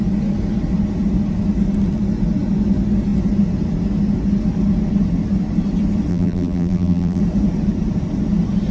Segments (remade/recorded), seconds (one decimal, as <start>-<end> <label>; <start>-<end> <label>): 0.0-6.1 recorded; 6.1-7.2 remade; 7.2-8.7 recorded